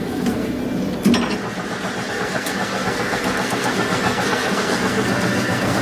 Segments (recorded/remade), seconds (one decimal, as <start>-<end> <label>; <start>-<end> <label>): 0.0-0.6 remade; 0.6-2.1 recorded; 2.1-5.8 remade